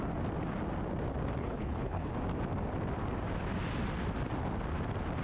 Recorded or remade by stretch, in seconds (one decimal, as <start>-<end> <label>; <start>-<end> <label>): 0.0-1.4 recorded; 1.4-2.1 remade; 2.1-5.2 recorded